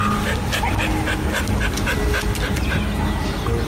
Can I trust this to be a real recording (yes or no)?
yes